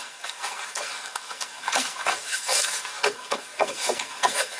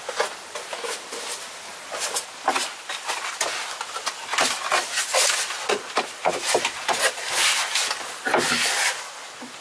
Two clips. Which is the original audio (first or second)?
second